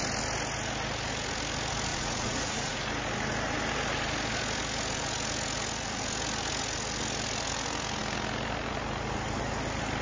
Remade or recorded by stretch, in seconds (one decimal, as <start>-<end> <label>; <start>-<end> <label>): 0.0-1.9 recorded; 1.9-2.8 remade; 2.8-10.0 recorded